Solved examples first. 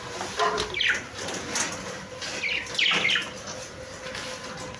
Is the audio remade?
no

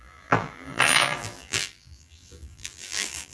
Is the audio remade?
yes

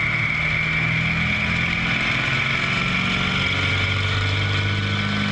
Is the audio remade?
no